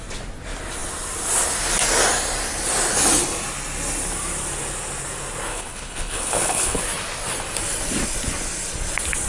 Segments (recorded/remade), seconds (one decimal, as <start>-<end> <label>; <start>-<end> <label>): 0.0-5.5 recorded; 5.5-6.8 remade; 6.8-9.3 recorded